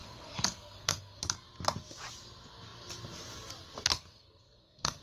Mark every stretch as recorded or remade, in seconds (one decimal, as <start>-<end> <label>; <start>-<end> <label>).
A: 0.0-1.2 remade; 1.2-3.9 recorded; 3.9-5.0 remade